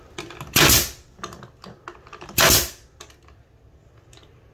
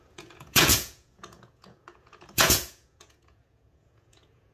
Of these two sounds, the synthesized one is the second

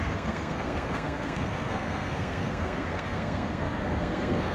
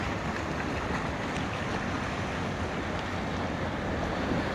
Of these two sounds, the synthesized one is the first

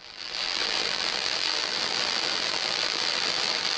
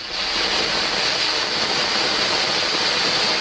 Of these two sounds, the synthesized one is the first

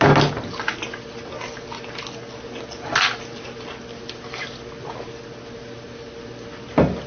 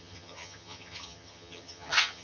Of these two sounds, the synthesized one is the second